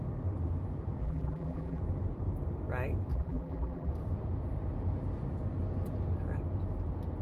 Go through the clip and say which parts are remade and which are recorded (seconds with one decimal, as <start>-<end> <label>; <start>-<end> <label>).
0.0-1.0 recorded; 1.0-1.8 remade; 1.8-3.1 recorded; 3.1-3.9 remade; 3.9-7.2 recorded